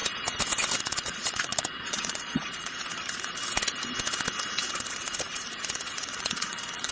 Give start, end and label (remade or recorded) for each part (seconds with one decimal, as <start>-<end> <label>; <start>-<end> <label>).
0.0-0.8 recorded; 0.8-3.4 remade; 3.4-4.7 recorded; 4.7-6.9 remade